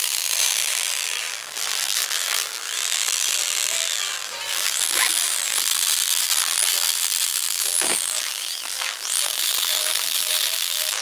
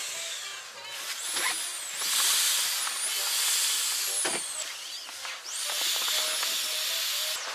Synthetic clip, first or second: first